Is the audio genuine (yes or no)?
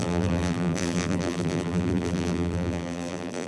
no